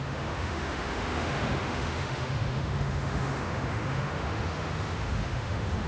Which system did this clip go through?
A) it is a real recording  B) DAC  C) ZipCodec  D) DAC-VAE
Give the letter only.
D